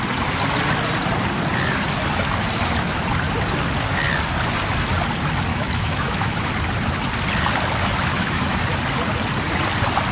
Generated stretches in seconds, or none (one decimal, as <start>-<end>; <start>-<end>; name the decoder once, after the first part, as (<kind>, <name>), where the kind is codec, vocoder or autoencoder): 5.5-6.5 (autoencoder, DAC-VAE); 8.1-8.6